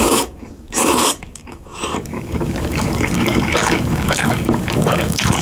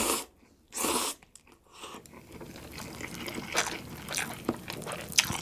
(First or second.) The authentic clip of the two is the second